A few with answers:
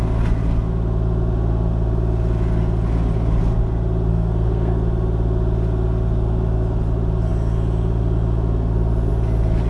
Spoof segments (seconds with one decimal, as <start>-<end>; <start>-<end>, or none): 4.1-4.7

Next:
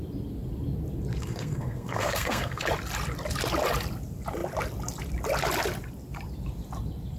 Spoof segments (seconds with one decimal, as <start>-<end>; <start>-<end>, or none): 1.1-2.6

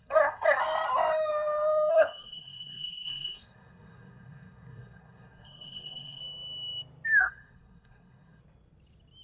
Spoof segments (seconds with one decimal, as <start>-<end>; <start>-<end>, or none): 0.0-0.6; 1.9-6.2; 7.2-8.4

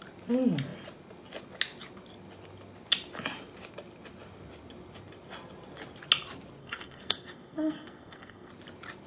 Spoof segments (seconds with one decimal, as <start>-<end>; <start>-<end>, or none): 6.6-8.5

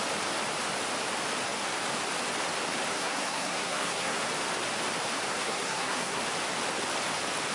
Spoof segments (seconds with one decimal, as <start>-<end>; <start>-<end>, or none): 2.9-4.2; 5.3-6.2

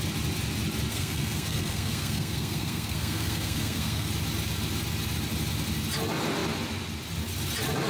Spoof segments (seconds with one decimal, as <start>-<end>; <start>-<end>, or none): 0.9-4.1